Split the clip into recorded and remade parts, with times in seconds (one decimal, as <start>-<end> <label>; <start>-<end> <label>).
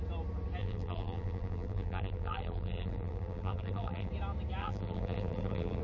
0.0-0.6 recorded; 0.6-4.1 remade; 4.1-4.6 recorded; 4.6-5.8 remade